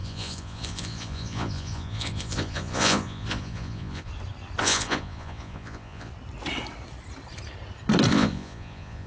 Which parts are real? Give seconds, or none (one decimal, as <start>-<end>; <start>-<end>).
4.1-4.6; 6.1-8.1